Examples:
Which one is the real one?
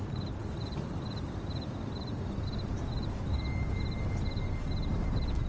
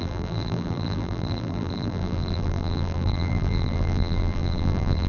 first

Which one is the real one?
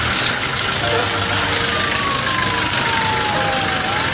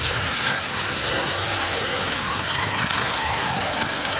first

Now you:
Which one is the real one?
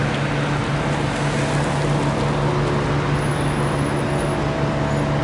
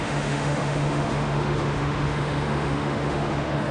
first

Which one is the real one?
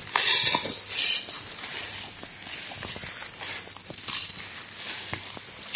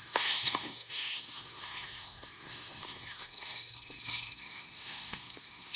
first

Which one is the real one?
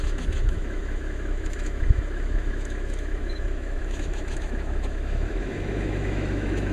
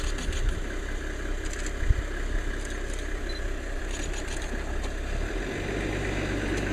second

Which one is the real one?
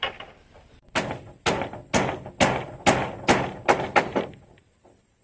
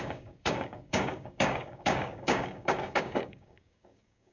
first